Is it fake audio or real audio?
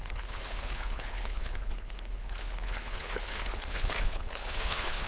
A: fake